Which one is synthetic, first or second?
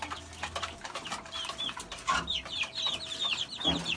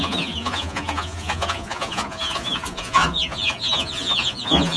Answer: second